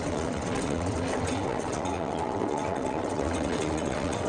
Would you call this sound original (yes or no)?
no